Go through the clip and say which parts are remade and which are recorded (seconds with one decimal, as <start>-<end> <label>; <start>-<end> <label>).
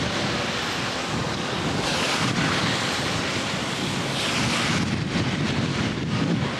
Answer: 0.0-1.0 recorded; 1.0-2.9 remade; 2.9-3.6 recorded; 3.6-4.2 remade; 4.2-5.7 recorded; 5.7-6.6 remade